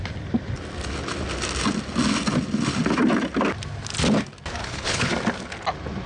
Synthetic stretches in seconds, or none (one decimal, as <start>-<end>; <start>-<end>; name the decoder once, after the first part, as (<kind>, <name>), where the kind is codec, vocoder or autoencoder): 4.6-5.1 (codec, HILCodec)